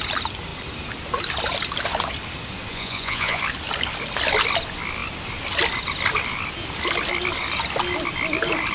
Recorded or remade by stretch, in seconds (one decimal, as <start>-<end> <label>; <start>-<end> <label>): 0.0-2.7 recorded; 2.7-3.4 remade; 3.4-8.7 recorded